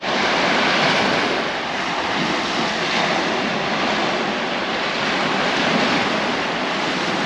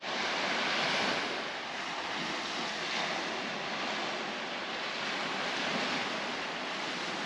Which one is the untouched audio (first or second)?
second